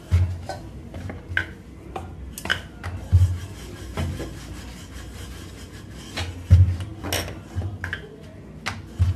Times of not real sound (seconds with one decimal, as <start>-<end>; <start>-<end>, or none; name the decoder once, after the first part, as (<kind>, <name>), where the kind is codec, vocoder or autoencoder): none